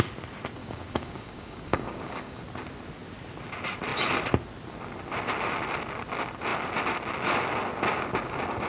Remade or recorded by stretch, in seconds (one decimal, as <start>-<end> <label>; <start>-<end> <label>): 0.0-0.6 recorded; 0.6-2.4 remade; 2.4-8.7 recorded